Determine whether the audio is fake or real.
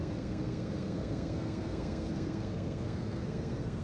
fake